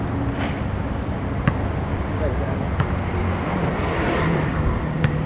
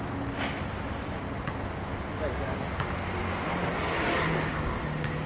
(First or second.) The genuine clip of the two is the second